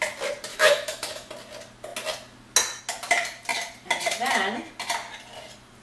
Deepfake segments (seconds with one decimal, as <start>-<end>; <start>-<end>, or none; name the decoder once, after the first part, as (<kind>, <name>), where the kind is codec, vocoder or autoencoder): 0.5-1.3 (autoencoder, DAC-VAE)